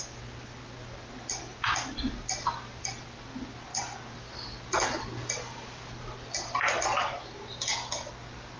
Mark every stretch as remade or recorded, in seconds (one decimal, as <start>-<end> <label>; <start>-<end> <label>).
0.0-8.6 recorded